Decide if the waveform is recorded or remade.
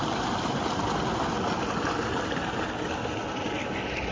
recorded